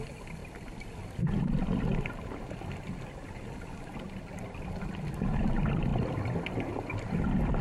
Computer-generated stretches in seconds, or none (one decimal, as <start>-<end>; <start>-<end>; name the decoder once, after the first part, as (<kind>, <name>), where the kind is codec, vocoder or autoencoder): none